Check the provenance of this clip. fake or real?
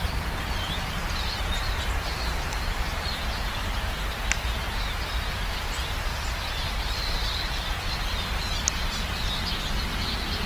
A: fake